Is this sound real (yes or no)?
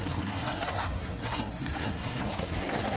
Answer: no